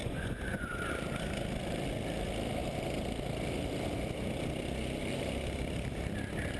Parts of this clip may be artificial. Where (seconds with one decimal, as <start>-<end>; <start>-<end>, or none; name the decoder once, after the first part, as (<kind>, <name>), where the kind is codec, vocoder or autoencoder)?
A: 0.0-0.9 (vocoder, Vocos)